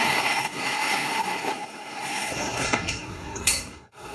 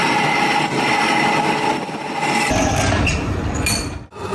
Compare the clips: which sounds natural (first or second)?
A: second